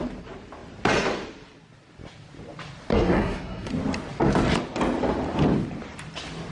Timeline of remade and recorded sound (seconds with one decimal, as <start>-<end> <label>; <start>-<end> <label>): 0.0-2.9 recorded; 2.9-3.7 remade; 3.7-6.5 recorded